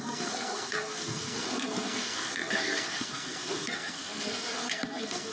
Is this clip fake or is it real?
fake